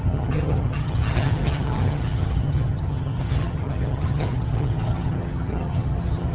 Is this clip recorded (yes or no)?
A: no